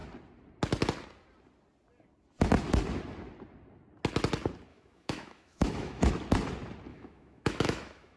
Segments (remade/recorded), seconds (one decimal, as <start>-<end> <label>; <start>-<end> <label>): 0.0-4.7 recorded; 4.7-6.1 remade; 6.1-6.9 recorded; 6.9-8.2 remade